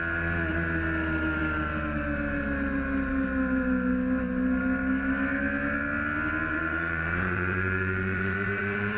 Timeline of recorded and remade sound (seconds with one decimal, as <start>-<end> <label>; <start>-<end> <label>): 0.0-6.5 recorded; 6.5-9.0 remade